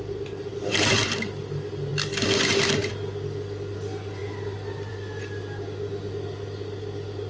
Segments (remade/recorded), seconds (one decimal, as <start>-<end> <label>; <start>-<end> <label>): 0.0-7.3 recorded